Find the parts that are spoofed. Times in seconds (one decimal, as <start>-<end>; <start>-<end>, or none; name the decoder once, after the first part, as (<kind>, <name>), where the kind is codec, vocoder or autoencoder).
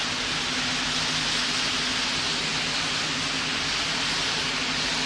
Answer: none